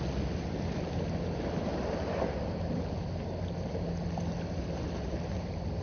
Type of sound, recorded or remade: recorded